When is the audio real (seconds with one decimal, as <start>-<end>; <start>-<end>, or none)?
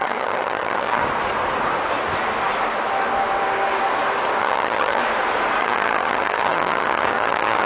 1.0-4.4; 5.0-5.6